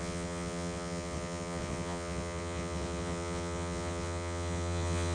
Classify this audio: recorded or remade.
remade